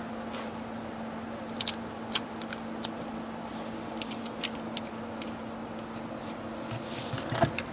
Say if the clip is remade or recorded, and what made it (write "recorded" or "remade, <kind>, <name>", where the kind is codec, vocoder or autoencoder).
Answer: recorded